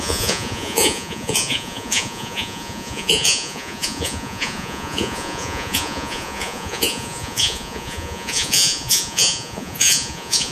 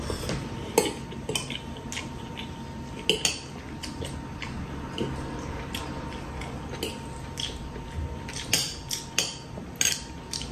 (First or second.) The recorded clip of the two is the second